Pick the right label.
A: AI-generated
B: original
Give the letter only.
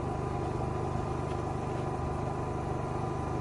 B